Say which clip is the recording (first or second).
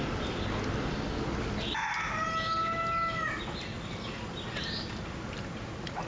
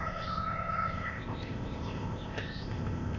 first